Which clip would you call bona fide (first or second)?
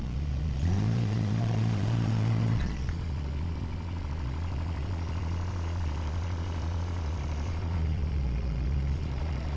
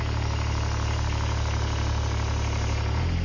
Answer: second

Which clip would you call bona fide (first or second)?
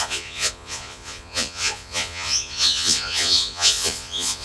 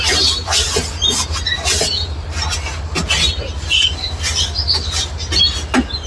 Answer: second